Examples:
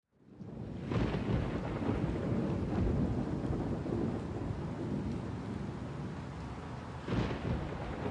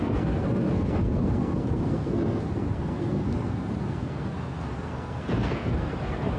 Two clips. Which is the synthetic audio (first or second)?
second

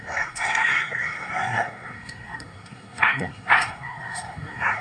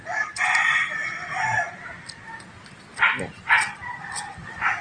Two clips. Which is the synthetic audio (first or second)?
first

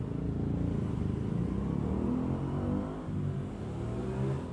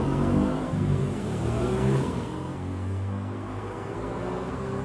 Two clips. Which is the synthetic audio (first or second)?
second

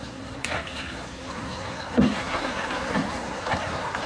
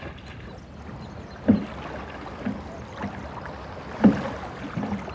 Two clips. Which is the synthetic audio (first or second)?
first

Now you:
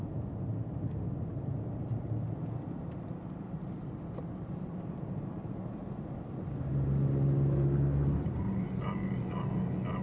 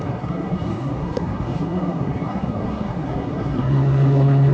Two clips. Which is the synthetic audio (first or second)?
second